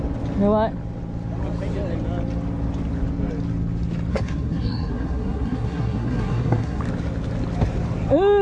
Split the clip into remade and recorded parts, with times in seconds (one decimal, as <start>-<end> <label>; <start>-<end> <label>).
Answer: 0.0-4.1 recorded; 4.1-6.8 remade; 6.8-8.4 recorded